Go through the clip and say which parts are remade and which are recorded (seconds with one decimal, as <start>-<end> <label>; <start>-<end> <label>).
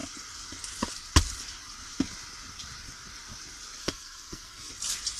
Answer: 0.0-3.8 recorded; 3.8-4.7 remade; 4.7-5.2 recorded